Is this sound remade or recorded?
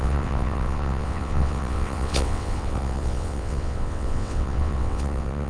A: remade